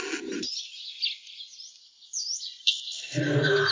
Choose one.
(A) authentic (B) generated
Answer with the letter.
A